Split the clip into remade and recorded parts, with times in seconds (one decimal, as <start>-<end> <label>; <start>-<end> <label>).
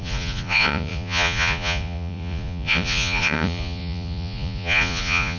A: 0.0-5.4 remade